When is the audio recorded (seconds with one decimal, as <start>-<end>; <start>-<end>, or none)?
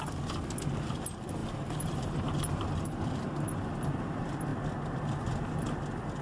0.0-1.4; 3.7-6.2